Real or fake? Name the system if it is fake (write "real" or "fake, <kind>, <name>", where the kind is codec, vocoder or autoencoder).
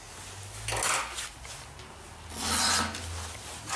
real